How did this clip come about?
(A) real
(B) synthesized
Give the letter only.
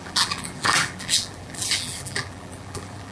B